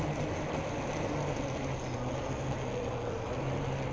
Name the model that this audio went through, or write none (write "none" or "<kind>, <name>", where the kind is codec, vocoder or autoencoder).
none